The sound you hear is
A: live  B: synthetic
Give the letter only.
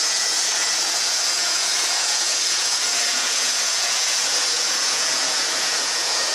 B